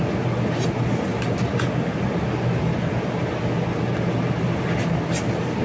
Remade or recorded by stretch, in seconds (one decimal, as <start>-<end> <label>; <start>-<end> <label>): 0.0-5.6 recorded